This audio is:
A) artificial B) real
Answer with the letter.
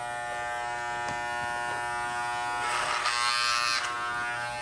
B